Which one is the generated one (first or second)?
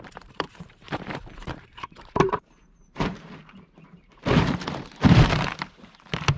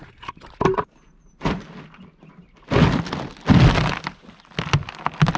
first